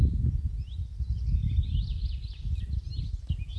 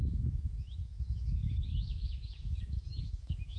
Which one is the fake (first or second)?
second